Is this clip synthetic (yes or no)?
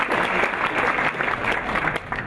no